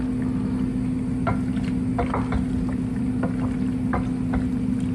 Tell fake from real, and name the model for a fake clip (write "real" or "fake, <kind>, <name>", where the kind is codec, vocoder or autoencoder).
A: real